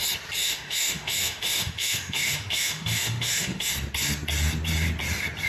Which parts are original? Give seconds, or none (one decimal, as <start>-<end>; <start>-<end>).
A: 0.0-0.4; 3.7-5.5